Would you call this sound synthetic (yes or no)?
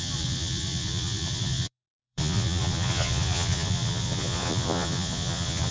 yes